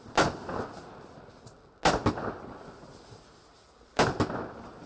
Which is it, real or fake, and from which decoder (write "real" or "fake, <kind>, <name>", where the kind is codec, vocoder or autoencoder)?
real